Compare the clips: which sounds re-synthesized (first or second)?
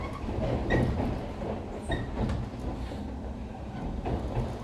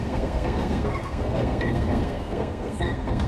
second